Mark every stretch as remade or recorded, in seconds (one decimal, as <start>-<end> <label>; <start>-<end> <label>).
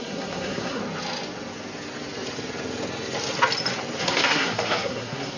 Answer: 0.0-0.8 remade; 0.8-4.0 recorded; 4.0-5.4 remade